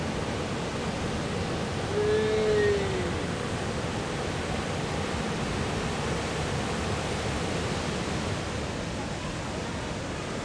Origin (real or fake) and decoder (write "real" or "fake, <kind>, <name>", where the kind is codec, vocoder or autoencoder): real